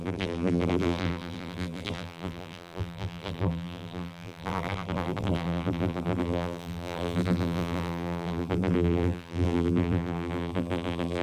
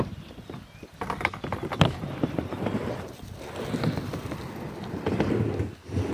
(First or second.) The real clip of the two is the second